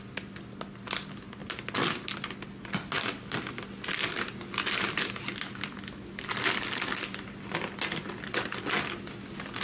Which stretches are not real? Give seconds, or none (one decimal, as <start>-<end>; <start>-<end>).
none